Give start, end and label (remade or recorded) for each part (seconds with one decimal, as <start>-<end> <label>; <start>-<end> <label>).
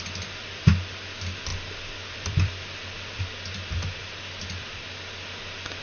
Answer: 0.0-1.5 recorded; 1.5-3.2 remade; 3.2-4.0 recorded; 4.0-5.0 remade; 5.0-5.8 recorded